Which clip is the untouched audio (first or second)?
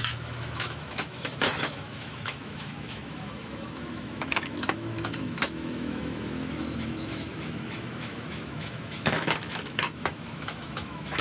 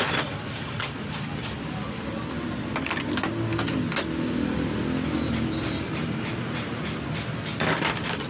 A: second